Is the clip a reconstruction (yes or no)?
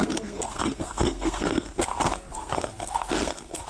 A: yes